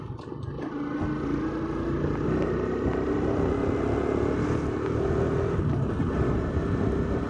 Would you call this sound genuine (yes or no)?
yes